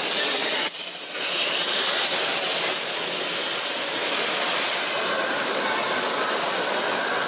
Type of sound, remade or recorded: recorded